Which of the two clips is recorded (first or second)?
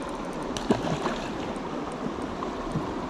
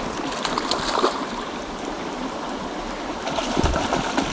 first